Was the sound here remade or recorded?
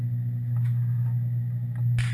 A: recorded